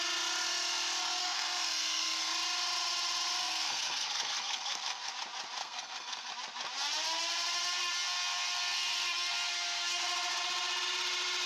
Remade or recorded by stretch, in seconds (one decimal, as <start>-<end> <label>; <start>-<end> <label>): 0.0-1.2 recorded; 1.2-2.3 remade; 2.3-3.4 recorded; 3.4-5.1 remade; 5.1-5.6 recorded; 5.6-6.3 remade; 6.3-11.5 recorded